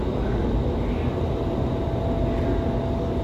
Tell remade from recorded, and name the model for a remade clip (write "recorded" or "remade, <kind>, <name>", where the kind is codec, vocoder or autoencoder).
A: recorded